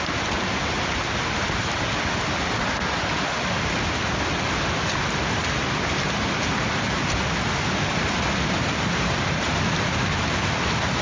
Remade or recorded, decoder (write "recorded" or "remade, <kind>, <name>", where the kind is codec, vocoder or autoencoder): recorded